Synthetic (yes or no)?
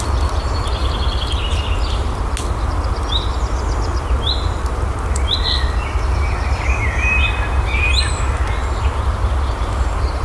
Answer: no